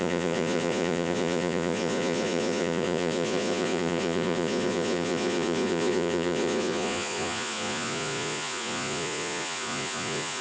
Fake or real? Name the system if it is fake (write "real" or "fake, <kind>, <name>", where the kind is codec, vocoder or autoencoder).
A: fake, vocoder, Vocos